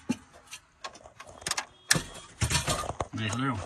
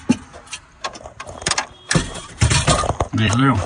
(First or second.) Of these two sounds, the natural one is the first